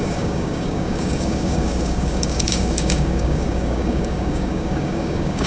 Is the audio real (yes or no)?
no